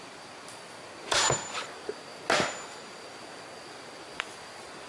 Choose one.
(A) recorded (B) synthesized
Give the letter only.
A